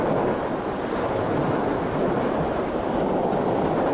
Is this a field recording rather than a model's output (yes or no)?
yes